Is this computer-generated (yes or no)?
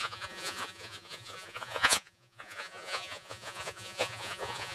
yes